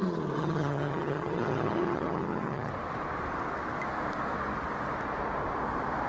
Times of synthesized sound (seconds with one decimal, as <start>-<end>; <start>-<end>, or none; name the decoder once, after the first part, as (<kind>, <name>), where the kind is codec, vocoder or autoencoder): 0.4-2.7 (vocoder, HiFi-GAN)